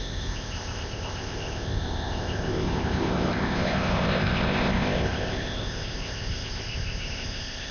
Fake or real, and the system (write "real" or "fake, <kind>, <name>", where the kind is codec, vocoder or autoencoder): fake, codec, ZipCodec